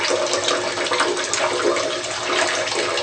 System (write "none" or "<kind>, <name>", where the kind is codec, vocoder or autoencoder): none